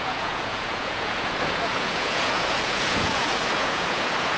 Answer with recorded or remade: remade